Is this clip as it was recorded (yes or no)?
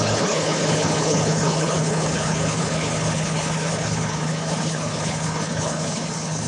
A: no